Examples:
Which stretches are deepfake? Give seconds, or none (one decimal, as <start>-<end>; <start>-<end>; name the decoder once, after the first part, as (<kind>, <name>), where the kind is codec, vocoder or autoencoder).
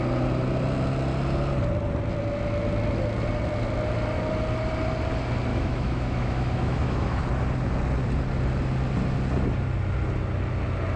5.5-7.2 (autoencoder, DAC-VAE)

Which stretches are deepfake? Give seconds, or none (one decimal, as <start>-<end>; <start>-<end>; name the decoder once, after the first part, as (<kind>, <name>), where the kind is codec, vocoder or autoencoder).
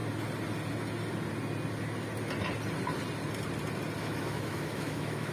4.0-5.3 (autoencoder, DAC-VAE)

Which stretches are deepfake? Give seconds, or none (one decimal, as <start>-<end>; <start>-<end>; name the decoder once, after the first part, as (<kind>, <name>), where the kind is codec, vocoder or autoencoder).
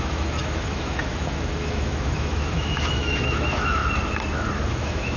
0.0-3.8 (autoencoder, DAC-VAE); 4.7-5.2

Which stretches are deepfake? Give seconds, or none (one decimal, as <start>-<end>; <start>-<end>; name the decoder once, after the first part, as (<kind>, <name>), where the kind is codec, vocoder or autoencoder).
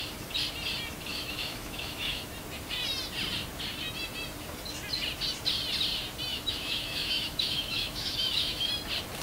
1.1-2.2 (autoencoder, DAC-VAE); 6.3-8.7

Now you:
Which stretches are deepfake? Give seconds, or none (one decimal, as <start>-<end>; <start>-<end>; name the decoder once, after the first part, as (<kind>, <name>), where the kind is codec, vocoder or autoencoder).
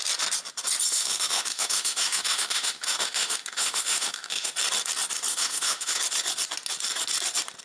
0.9-4.5 (autoencoder, DAC-VAE); 5.3-6.0